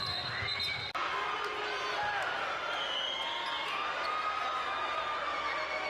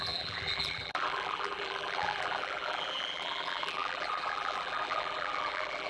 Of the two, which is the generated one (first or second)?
second